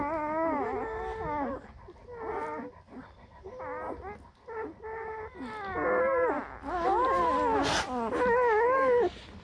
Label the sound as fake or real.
real